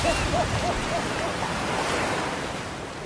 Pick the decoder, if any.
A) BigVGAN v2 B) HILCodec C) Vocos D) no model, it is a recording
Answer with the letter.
A